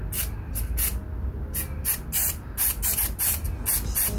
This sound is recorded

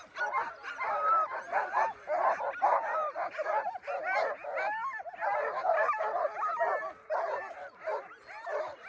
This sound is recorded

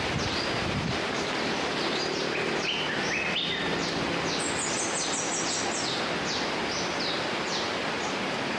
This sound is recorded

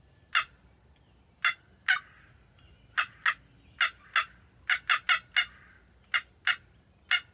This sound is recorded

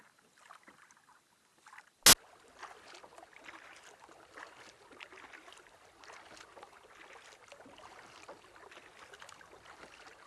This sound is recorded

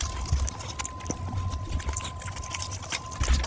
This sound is recorded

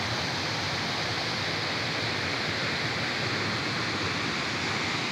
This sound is recorded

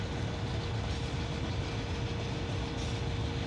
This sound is recorded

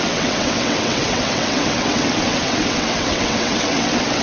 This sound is remade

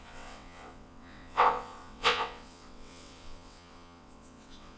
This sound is remade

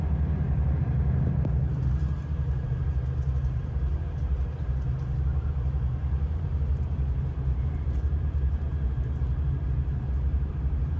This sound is remade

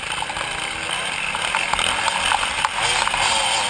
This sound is recorded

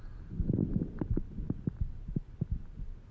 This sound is recorded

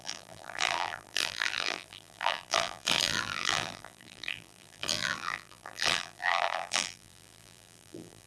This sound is remade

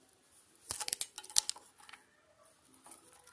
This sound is recorded